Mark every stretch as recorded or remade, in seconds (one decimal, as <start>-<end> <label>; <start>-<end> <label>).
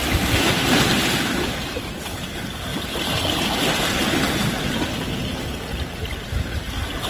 0.0-2.2 remade; 2.2-2.7 recorded; 2.7-4.6 remade; 4.6-7.1 recorded